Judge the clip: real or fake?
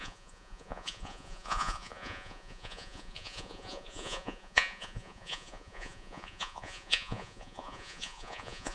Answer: fake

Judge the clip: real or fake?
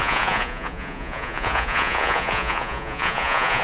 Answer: fake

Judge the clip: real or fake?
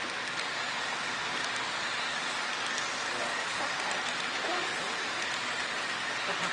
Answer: real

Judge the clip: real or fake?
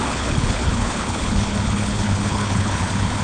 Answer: fake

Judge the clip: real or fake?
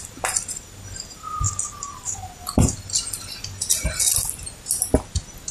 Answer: real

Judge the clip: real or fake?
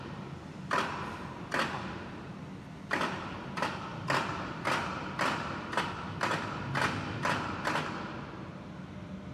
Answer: real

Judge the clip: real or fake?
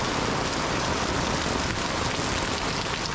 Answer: real